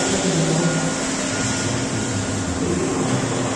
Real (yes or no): yes